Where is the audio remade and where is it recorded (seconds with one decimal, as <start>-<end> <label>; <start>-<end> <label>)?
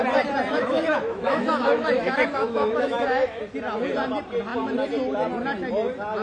0.0-0.5 recorded; 0.5-3.4 remade; 3.4-6.2 recorded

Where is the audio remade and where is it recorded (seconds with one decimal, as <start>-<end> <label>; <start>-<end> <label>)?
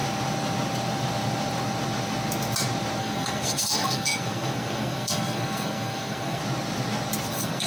0.0-3.0 recorded; 3.0-6.4 remade; 6.4-7.3 recorded; 7.3-7.7 remade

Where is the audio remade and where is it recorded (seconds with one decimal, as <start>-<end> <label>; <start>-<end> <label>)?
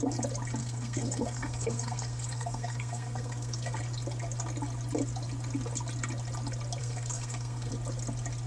0.0-0.6 recorded; 0.6-3.8 remade; 3.8-6.8 recorded; 6.8-7.7 remade; 7.7-8.5 recorded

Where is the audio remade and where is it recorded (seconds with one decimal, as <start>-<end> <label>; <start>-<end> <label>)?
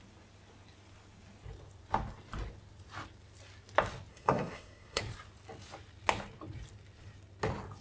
0.0-4.1 recorded; 4.1-5.0 remade; 5.0-7.8 recorded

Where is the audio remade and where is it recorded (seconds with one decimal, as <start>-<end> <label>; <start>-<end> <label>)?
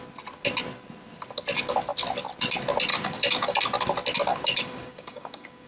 0.0-2.9 recorded; 2.9-3.6 remade; 3.6-4.3 recorded; 4.3-5.7 remade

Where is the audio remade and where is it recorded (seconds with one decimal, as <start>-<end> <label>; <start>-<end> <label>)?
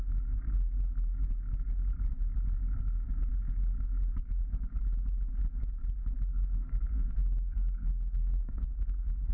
0.0-6.3 recorded; 6.3-9.3 remade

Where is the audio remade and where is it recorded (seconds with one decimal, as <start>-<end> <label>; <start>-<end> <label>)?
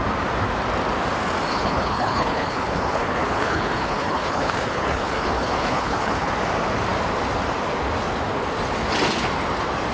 0.0-1.5 recorded; 1.5-6.3 remade; 6.3-9.9 recorded